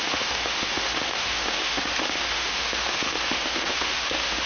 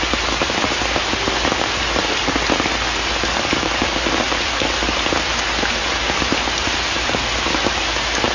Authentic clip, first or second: second